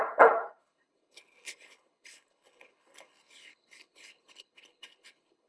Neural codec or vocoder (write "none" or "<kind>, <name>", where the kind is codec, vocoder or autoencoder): codec, HILCodec